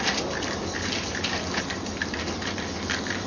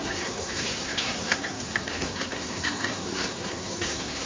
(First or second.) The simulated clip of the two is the second